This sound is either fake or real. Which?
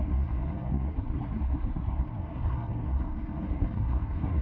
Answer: fake